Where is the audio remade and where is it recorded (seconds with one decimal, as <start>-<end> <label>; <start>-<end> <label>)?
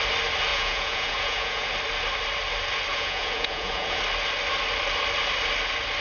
0.0-0.5 recorded; 0.5-1.7 remade; 1.7-2.9 recorded; 2.9-4.0 remade; 4.0-6.0 recorded